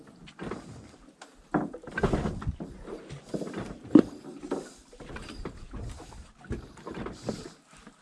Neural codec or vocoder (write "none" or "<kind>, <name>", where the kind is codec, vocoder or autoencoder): none